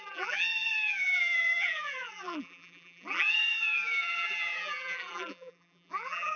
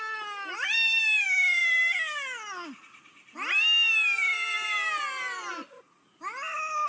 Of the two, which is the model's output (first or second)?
first